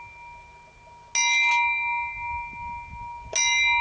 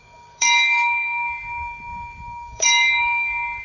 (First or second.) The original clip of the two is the first